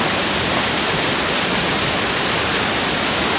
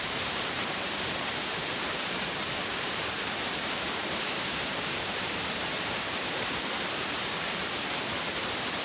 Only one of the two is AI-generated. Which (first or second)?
second